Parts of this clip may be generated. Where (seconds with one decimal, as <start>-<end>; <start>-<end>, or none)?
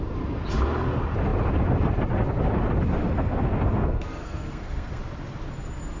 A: 3.0-5.0